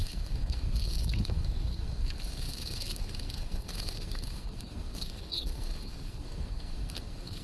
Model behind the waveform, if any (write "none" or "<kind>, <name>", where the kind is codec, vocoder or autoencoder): codec, SNAC